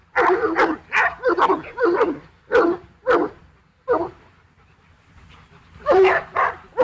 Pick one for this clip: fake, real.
real